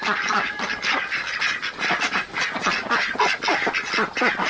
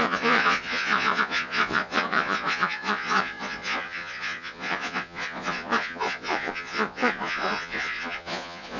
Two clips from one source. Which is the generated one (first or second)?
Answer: second